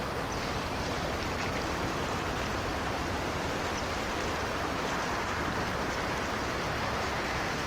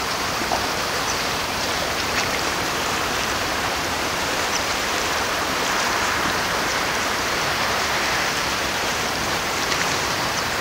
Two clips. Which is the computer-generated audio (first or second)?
second